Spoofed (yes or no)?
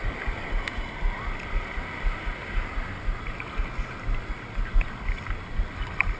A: no